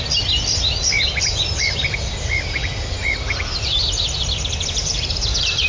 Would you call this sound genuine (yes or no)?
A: yes